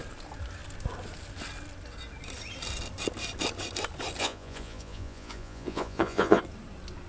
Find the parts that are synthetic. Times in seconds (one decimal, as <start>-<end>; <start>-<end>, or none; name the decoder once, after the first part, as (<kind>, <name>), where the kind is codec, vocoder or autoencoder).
4.2-6.4 (vocoder, Vocos)